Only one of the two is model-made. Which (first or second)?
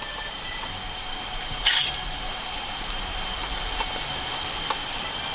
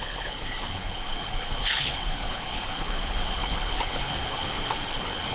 second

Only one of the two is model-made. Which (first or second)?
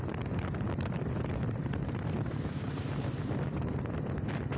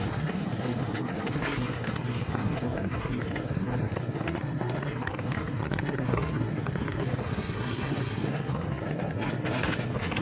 second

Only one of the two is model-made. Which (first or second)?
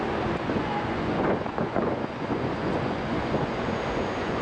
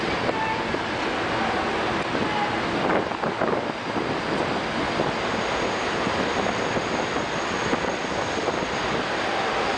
first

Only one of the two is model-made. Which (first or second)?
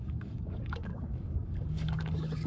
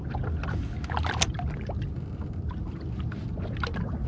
first